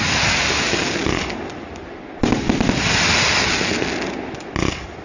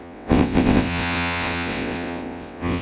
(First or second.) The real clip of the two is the first